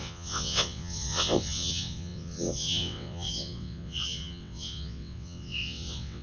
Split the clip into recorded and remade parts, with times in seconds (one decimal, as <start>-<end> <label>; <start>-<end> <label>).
0.0-6.2 remade